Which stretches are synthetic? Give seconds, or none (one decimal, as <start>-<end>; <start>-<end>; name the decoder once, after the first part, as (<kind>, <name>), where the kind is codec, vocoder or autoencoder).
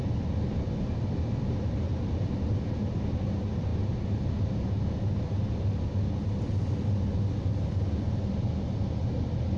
none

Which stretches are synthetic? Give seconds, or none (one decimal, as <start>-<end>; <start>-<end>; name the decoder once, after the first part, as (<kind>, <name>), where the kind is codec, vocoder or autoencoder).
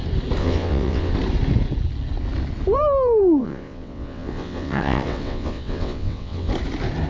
0.4-1.1 (vocoder, WaveNeXt); 3.4-6.5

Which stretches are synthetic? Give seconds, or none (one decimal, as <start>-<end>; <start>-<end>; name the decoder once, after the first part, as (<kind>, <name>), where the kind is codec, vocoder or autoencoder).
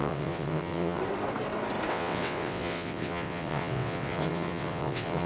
0.0-1.0 (vocoder, WaveNeXt); 1.9-5.3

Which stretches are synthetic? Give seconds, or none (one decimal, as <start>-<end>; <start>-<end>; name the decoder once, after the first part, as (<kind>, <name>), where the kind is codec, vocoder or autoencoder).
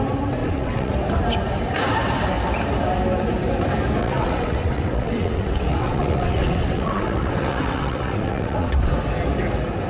0.4-0.9 (vocoder, WaveNeXt); 4.0-8.9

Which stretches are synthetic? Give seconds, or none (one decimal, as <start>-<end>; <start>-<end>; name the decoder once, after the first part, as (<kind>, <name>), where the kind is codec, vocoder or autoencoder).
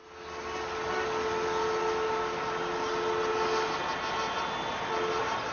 none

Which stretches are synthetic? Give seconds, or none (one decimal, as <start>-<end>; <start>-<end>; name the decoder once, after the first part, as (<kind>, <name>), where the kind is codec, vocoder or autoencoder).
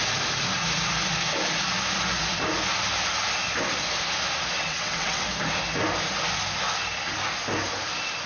4.6-5.3 (vocoder, WaveNeXt)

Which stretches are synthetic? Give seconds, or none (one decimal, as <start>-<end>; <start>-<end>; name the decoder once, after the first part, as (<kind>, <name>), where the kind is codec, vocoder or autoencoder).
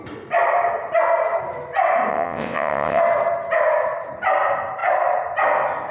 2.1-3.0 (vocoder, WaveNeXt)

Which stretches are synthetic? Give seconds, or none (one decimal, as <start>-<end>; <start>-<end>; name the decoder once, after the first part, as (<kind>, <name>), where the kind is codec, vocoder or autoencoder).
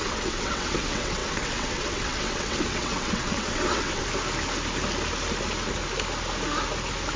0.0-4.0 (vocoder, WaveNeXt)